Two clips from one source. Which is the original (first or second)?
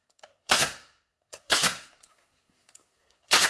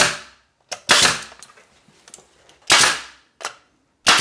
second